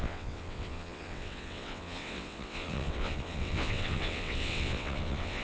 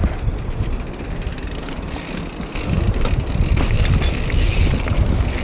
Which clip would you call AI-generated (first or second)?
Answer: first